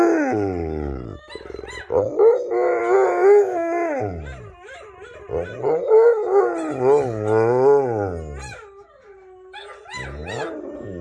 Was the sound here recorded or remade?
recorded